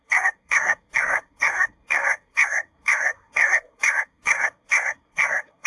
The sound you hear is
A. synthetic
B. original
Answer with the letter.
A